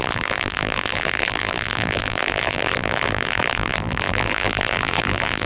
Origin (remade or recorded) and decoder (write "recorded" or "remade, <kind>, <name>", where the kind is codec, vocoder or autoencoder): remade, vocoder, BigVGAN v2